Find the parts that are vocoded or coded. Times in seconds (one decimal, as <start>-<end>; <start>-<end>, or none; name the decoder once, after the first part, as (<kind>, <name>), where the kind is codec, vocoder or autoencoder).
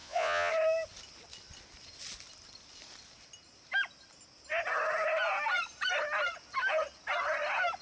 0.0-0.5 (vocoder, Vocos)